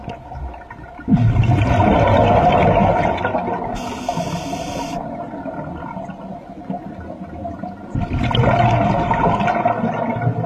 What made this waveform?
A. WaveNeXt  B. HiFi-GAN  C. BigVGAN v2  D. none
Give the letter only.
D